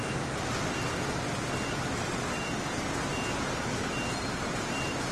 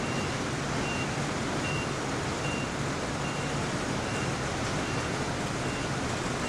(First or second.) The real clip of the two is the first